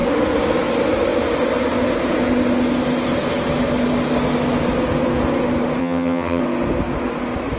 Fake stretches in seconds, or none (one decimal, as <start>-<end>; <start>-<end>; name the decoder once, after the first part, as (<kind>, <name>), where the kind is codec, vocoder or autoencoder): 5.8-6.4 (vocoder, HiFi-GAN)